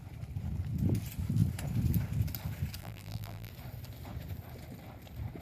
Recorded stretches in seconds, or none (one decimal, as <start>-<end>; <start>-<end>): 0.0-2.8; 3.5-5.4